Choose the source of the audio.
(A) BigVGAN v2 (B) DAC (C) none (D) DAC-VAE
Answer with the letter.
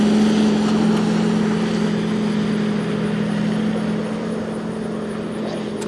C